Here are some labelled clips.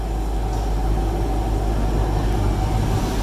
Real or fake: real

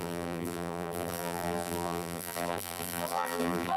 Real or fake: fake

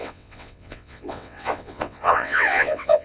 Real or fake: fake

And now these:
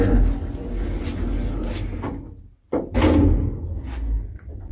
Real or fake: real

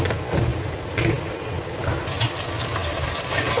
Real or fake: real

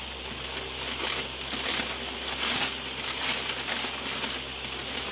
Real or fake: real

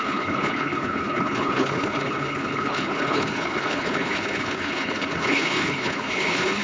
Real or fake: fake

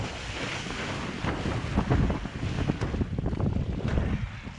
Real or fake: real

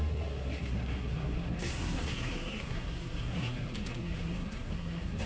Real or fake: fake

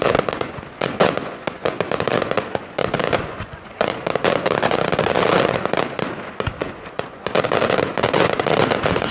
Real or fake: fake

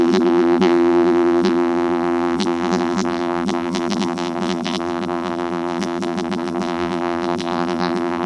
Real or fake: fake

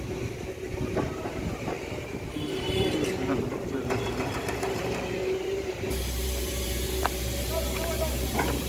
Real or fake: fake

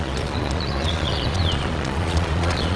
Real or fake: fake